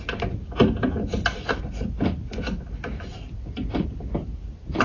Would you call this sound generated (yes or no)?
no